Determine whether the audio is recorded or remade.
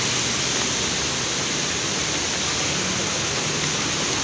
recorded